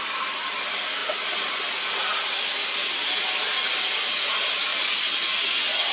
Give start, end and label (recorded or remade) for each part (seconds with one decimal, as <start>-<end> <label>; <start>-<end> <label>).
0.0-5.9 recorded